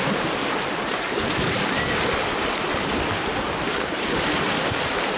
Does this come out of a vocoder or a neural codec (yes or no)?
no